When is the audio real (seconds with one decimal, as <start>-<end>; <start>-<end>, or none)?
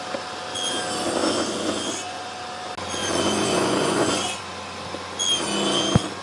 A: 0.0-1.2; 2.4-3.0; 4.4-6.2